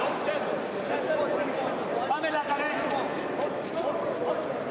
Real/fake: fake